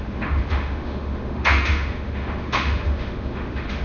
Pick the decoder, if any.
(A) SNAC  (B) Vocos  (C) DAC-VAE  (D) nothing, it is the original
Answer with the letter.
C